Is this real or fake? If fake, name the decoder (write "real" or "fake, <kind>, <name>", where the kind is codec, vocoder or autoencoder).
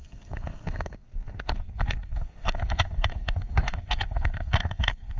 fake, codec, SNAC